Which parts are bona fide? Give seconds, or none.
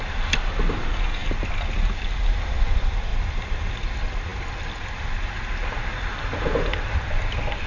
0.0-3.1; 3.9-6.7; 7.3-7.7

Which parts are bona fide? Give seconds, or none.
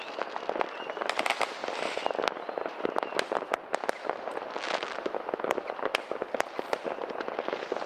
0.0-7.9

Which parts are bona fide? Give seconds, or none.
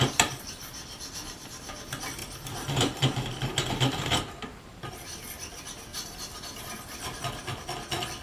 0.0-2.2; 4.9-5.9; 6.6-8.2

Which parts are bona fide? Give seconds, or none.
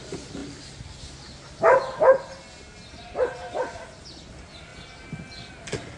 0.0-6.0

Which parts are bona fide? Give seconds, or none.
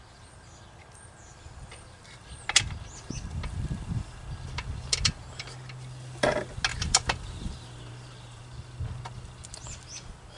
0.0-6.7; 8.4-10.4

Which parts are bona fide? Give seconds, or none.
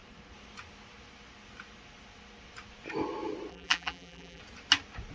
0.0-3.5; 4.4-5.1